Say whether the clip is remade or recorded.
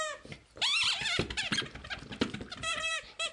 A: remade